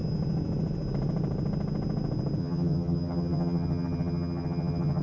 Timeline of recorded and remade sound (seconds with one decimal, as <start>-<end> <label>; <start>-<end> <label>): 0.0-2.4 recorded; 2.4-5.0 remade